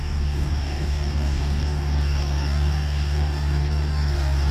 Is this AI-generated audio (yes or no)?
yes